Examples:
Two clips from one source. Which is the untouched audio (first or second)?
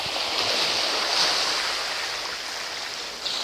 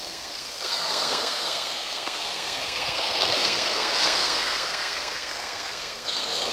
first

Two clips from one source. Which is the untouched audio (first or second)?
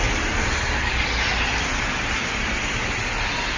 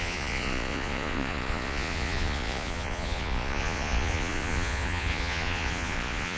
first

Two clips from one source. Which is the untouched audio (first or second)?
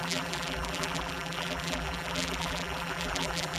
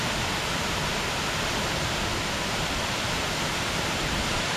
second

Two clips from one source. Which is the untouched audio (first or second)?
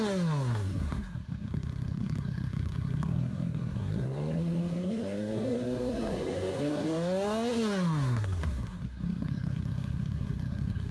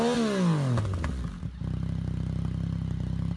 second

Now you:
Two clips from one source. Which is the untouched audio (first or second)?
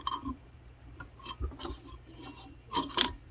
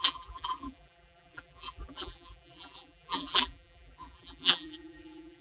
first